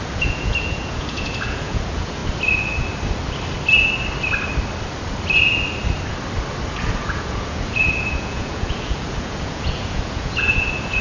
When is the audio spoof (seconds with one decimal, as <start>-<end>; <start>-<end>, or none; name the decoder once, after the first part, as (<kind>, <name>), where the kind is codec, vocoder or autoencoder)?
0.0-2.2 (vocoder, Vocos); 6.7-11.0